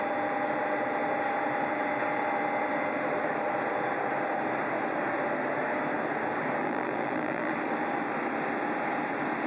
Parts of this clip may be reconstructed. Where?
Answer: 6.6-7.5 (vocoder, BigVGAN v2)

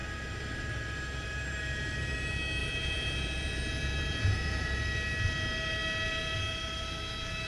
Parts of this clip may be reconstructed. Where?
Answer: 2.6-4.8 (vocoder, Vocos)

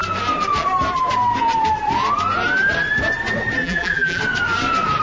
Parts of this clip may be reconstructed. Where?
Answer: 3.6-4.2 (vocoder, BigVGAN v2)

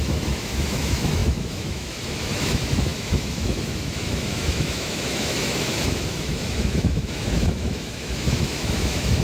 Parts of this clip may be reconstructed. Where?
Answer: 0.0-9.2 (autoencoder, DAC-VAE)

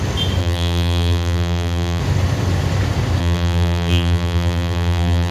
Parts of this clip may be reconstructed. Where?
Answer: 0.4-2.0 (vocoder, BigVGAN v2); 3.2-5.3

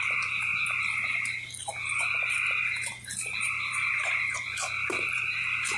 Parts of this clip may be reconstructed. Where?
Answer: none

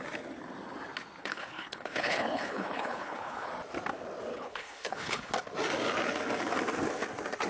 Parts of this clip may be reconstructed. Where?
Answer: 1.2-3.5 (codec, HILCodec); 4.3-5.3

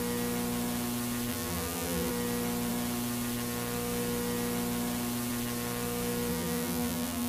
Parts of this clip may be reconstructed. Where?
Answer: 1.3-2.1 (vocoder, BigVGAN v2); 6.3-7.3